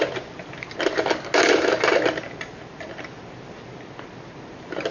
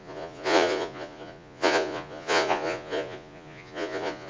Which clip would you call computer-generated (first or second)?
second